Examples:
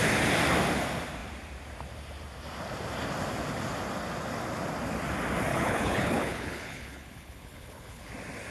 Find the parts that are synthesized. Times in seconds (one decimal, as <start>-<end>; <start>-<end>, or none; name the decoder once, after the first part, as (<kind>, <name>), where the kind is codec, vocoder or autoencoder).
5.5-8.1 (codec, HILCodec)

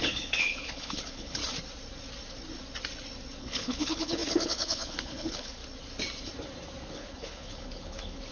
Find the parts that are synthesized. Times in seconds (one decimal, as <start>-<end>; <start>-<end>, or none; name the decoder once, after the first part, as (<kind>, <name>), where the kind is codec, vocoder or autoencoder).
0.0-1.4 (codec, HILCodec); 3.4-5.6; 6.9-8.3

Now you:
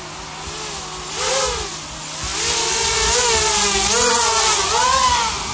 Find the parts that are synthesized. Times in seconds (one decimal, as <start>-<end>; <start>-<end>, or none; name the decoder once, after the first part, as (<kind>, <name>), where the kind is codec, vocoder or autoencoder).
none

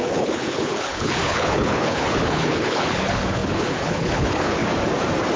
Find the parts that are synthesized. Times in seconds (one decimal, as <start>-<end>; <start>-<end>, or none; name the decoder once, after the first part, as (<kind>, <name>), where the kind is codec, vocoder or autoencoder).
0.0-4.6 (codec, HILCodec)

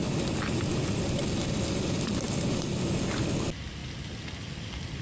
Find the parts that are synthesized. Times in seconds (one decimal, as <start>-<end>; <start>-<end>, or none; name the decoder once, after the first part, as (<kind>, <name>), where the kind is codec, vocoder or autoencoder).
none